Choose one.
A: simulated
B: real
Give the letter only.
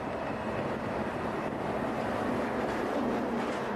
B